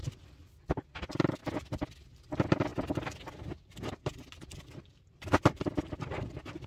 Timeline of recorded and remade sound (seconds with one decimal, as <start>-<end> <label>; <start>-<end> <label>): 0.0-6.7 recorded